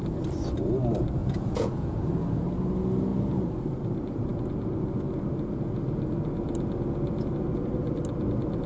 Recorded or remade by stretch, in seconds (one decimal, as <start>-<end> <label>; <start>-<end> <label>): 0.0-1.2 recorded; 1.2-2.1 remade; 2.1-8.7 recorded